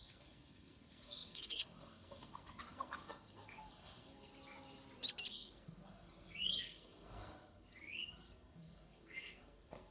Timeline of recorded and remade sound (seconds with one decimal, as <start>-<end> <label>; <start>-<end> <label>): 0.0-4.3 remade; 4.3-5.3 recorded; 5.3-9.9 remade

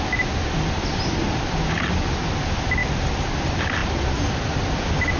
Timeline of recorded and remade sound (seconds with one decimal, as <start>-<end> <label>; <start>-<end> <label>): 0.0-5.2 recorded

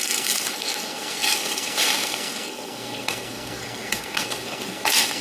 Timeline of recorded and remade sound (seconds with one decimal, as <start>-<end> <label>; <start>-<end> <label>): 0.0-5.2 remade